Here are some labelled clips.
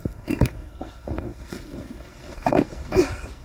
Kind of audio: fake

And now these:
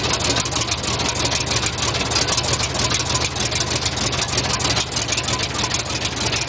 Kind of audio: real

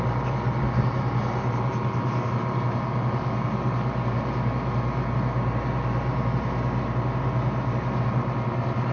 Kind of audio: real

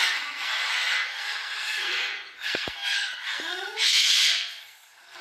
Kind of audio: fake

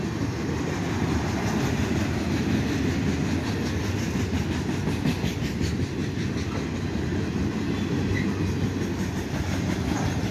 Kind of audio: real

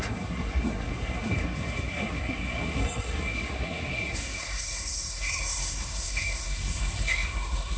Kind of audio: fake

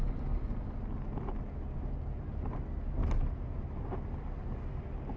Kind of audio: real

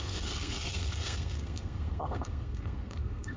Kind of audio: fake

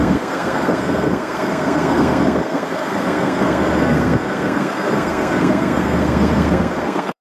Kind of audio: fake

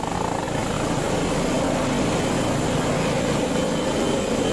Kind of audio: real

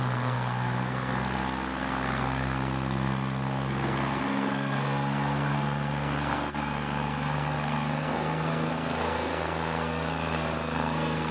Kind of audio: fake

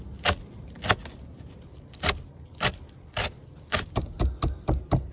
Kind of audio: real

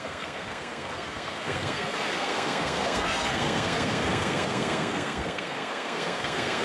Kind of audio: fake